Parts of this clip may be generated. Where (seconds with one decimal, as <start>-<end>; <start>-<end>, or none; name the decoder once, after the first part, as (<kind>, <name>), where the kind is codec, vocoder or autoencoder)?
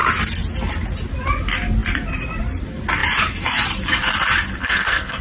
4.6-5.2 (codec, SNAC)